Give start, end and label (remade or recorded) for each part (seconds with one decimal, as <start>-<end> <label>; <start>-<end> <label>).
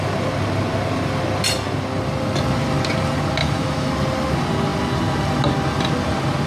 0.0-3.4 recorded; 3.4-3.9 remade; 3.9-6.5 recorded